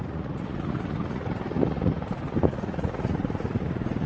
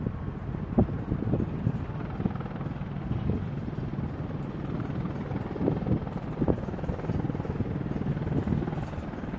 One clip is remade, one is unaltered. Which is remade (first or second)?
first